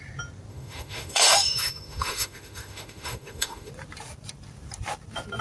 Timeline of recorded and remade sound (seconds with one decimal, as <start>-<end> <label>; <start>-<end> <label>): 0.0-0.5 recorded; 0.5-3.7 remade; 3.7-5.4 recorded